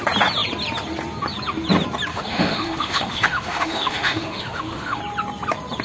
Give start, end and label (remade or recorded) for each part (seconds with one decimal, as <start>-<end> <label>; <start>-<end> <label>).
0.0-2.1 recorded; 2.1-5.0 remade; 5.0-5.8 recorded